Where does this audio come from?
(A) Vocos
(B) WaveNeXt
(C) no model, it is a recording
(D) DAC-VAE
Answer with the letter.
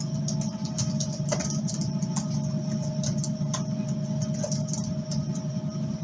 C